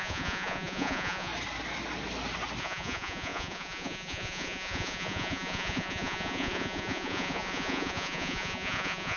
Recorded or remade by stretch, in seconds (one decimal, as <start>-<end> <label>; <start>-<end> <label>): 0.0-1.3 remade; 1.3-2.6 recorded; 2.6-9.2 remade